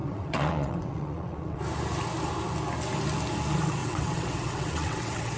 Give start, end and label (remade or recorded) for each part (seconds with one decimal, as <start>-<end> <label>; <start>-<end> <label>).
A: 0.0-1.6 remade; 1.6-3.8 recorded; 3.8-5.4 remade